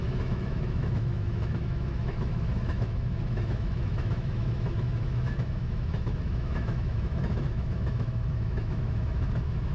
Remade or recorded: remade